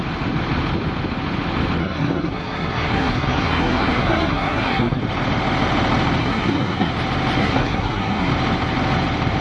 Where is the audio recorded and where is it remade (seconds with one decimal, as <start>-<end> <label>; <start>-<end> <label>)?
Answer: 0.0-1.8 recorded; 1.8-5.0 remade; 5.0-6.2 recorded; 6.2-6.9 remade; 6.9-7.4 recorded; 7.4-8.3 remade; 8.3-9.4 recorded